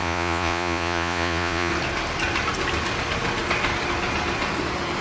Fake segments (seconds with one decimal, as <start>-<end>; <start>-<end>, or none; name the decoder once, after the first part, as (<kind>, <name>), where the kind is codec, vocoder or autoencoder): 0.0-1.7 (vocoder, Vocos)